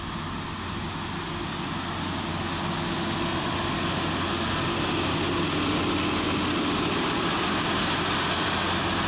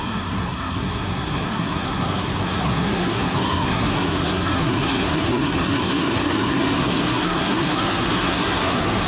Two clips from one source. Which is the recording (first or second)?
first